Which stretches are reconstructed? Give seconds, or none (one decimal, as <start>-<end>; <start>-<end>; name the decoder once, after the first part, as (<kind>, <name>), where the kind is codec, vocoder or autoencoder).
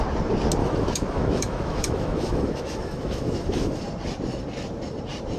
0.6-3.8 (autoencoder, DAC-VAE)